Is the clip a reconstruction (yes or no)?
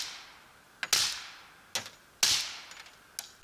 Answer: no